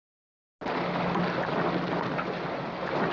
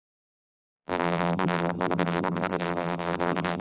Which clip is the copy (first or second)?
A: second